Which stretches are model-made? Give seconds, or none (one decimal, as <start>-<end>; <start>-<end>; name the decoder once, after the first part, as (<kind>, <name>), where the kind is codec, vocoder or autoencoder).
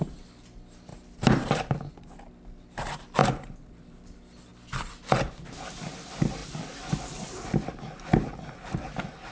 3.2-3.8 (vocoder, BigVGAN v2)